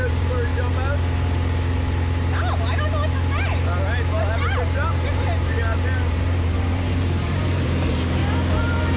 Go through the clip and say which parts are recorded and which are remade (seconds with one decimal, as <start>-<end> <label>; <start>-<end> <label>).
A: 0.0-0.5 remade; 0.5-4.9 recorded; 4.9-8.2 remade; 8.2-9.0 recorded